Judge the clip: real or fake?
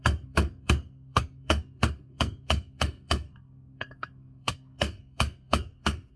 fake